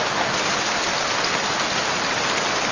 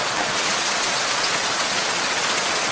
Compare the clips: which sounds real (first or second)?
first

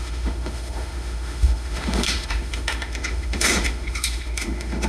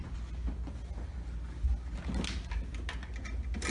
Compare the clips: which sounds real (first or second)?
second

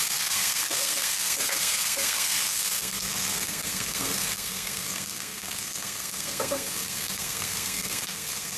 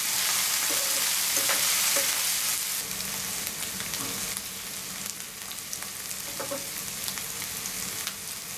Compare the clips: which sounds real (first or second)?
second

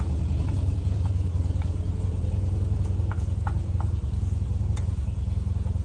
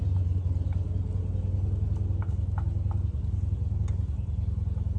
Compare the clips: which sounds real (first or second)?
second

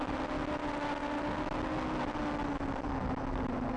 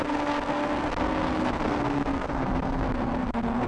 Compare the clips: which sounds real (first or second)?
first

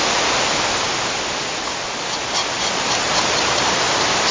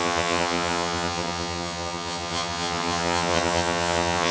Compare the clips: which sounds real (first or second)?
first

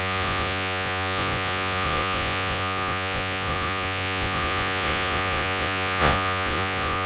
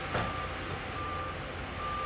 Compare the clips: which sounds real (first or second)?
second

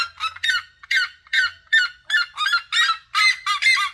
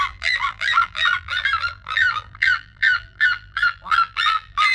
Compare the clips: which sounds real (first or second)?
first